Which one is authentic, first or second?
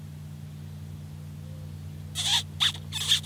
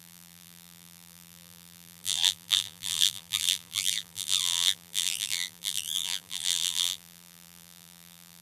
first